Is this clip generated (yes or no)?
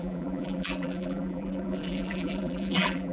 yes